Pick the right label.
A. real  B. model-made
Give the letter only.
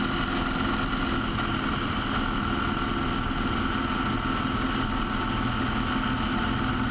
A